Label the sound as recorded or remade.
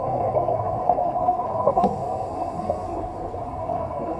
remade